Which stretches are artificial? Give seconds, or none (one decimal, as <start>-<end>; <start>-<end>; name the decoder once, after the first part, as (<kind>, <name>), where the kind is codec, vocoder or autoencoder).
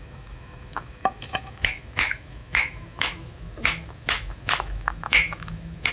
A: 0.0-5.9 (autoencoder, DAC-VAE)